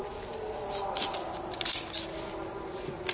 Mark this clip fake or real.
real